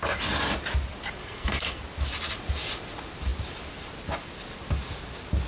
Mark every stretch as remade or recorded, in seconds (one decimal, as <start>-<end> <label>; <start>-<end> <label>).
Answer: 0.0-1.2 recorded; 1.2-1.8 remade; 1.8-5.5 recorded